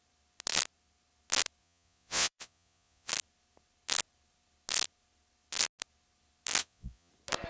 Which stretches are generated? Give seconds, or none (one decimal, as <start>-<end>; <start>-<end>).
1.6-3.1; 6.6-7.1